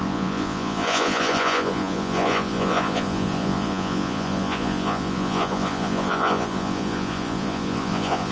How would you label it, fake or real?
fake